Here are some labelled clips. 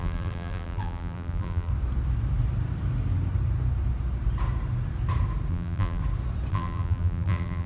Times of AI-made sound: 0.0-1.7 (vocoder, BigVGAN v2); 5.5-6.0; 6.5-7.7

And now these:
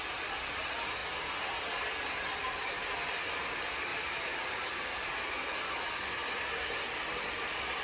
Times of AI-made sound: 3.9-4.7 (vocoder, BigVGAN v2)

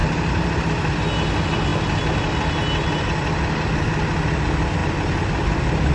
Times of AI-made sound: 0.0-0.8 (vocoder, BigVGAN v2); 4.8-5.9

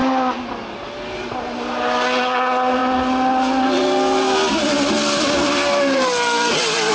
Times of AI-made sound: none